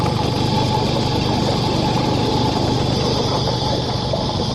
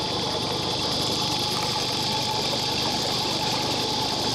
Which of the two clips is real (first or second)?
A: first